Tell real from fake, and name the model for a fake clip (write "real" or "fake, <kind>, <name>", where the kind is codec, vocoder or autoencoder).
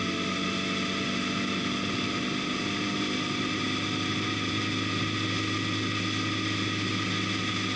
real